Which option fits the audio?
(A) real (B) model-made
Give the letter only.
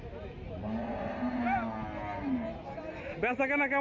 A